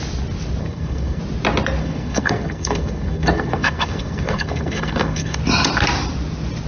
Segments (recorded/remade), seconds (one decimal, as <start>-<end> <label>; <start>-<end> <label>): 0.0-0.6 recorded; 0.6-1.2 remade; 1.2-1.8 recorded; 1.8-5.4 remade; 5.4-6.7 recorded